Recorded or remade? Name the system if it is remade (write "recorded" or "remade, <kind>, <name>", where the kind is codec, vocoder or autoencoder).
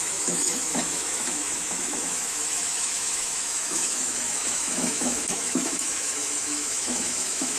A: remade, autoencoder, DAC-VAE